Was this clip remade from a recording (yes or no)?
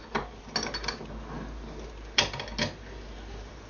no